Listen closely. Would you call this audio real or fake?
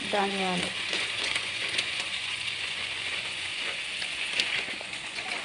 fake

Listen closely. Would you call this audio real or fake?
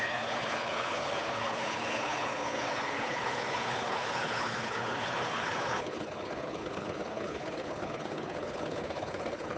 fake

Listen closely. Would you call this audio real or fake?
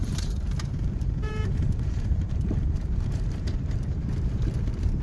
fake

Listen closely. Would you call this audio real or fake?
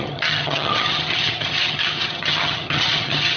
fake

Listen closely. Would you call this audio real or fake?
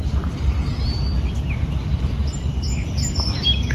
real